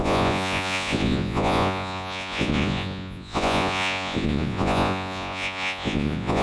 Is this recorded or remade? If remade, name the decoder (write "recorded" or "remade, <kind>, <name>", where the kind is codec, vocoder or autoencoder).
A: remade, vocoder, Vocos